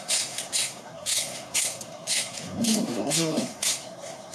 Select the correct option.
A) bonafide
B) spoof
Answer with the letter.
B